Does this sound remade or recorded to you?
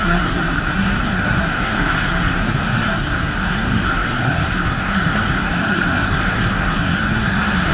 remade